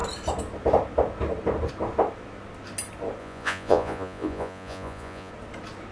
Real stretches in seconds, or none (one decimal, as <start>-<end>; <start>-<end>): 0.0-3.2; 5.3-5.9